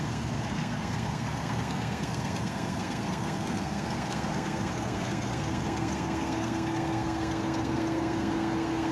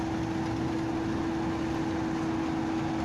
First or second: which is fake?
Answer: first